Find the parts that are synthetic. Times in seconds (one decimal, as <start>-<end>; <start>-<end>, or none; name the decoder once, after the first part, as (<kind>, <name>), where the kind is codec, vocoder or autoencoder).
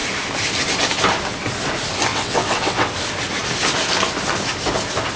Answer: 2.1-2.9 (vocoder, WaveNeXt)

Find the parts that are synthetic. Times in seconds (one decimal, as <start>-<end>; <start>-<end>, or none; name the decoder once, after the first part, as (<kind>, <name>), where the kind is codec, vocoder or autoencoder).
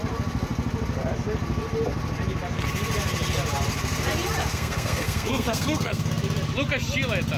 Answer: 4.5-6.1 (codec, SNAC)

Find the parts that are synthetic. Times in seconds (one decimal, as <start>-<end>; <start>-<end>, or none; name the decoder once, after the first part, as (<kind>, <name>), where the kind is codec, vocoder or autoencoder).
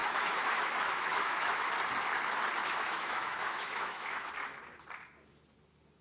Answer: 0.0-1.7 (autoencoder, DAC-VAE); 2.6-4.3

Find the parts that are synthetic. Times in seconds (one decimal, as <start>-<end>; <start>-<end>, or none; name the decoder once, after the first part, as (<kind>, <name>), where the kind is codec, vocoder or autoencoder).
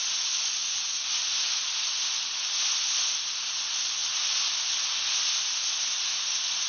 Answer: none